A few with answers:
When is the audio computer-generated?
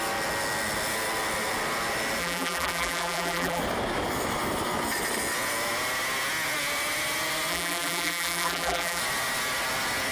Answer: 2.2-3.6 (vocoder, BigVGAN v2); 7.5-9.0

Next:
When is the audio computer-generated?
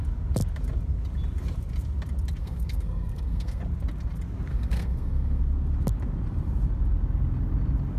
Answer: 2.4-3.6 (codec, SNAC); 4.5-5.4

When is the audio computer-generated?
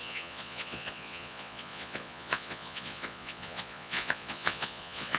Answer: 0.0-5.2 (vocoder, Vocos)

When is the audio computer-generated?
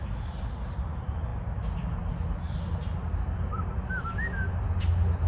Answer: none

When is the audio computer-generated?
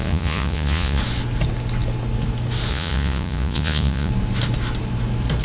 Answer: 0.0-1.0 (vocoder, Vocos); 2.7-4.1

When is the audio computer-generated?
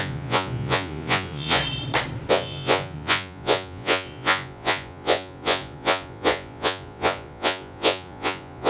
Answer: 0.0-1.6 (vocoder, Vocos); 2.3-8.7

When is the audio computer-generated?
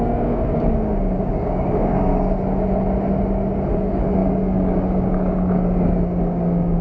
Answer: 0.0-2.1 (codec, DAC); 3.7-6.8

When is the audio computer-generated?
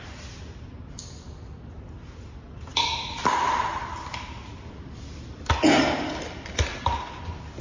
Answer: none